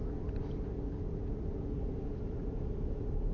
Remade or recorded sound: recorded